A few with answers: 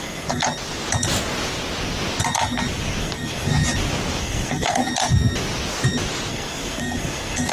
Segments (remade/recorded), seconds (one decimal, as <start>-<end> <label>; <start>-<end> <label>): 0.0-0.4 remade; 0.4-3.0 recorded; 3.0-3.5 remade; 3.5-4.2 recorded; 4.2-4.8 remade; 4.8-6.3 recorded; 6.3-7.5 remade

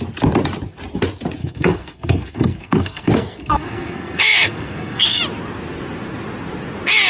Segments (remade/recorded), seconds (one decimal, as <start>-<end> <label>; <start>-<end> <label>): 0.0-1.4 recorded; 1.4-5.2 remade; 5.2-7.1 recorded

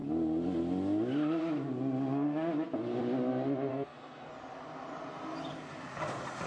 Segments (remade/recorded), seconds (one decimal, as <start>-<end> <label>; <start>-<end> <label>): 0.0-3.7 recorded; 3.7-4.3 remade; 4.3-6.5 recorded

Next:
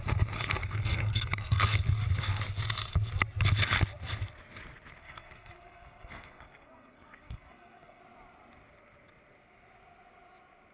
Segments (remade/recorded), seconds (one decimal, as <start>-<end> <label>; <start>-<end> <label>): 0.0-0.6 recorded; 0.6-1.8 remade; 1.8-5.0 recorded; 5.0-8.0 remade; 8.0-10.7 recorded